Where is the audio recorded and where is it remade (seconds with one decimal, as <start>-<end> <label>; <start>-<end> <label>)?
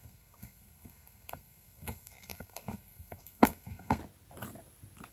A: 0.0-4.0 remade; 4.0-5.1 recorded